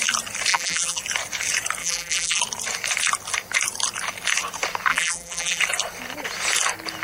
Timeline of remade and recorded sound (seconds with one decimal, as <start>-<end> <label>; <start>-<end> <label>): 0.0-0.5 recorded; 0.5-1.0 remade; 1.0-1.8 recorded; 1.8-2.4 remade; 2.4-4.9 recorded; 4.9-5.6 remade; 5.6-7.0 recorded